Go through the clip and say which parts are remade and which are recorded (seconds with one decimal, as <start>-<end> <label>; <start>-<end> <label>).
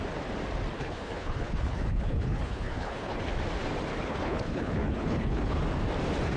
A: 0.0-0.8 recorded; 0.8-3.2 remade; 3.2-3.9 recorded; 3.9-5.6 remade; 5.6-6.4 recorded